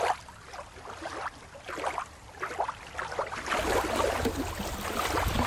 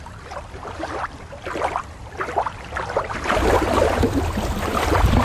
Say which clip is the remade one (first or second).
second